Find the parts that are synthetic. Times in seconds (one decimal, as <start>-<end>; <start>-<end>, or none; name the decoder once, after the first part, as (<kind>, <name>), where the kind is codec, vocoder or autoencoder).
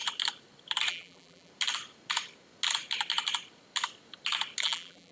0.9-1.5 (vocoder, BigVGAN v2); 4.6-5.1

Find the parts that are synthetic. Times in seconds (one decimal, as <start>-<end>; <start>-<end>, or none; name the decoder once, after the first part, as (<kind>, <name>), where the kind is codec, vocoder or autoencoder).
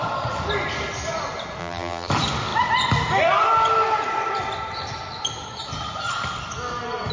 1.6-2.1 (vocoder, BigVGAN v2)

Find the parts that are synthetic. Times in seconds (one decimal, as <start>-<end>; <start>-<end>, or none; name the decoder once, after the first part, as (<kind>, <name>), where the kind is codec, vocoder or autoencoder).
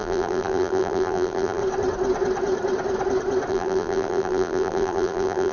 0.0-1.6 (vocoder, BigVGAN v2); 3.5-5.5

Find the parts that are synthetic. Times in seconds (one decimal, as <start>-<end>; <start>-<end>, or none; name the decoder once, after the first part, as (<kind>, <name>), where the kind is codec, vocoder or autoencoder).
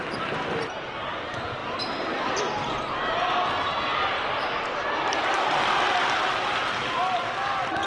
none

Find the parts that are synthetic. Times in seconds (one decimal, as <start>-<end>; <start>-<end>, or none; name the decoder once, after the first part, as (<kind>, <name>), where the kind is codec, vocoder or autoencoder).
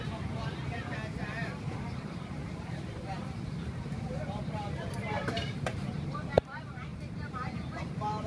0.0-0.4 (vocoder, BigVGAN v2); 1.7-8.3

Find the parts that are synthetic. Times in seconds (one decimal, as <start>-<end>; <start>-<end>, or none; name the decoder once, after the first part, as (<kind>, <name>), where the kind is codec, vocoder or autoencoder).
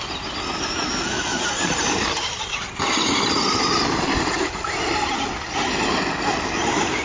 1.3-5.1 (vocoder, BigVGAN v2)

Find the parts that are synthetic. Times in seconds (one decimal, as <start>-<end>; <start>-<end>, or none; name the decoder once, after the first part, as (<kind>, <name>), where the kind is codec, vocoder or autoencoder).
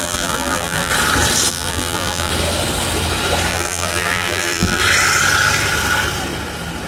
0.0-0.9 (vocoder, BigVGAN v2); 1.5-2.3; 3.5-4.8